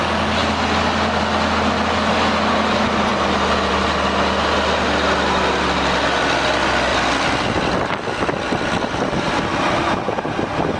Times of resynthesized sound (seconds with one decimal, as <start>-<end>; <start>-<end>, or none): 0.4-1.2; 6.9-7.7